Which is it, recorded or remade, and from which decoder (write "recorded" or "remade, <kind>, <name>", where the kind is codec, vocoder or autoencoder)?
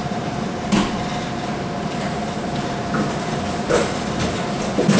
recorded